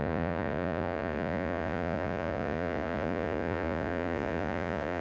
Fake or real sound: fake